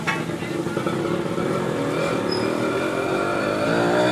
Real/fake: real